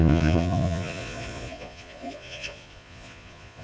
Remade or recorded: remade